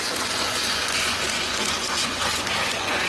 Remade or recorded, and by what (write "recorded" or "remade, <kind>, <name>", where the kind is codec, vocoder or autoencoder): remade, vocoder, Vocos